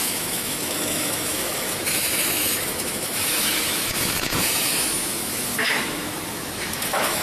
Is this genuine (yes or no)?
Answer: no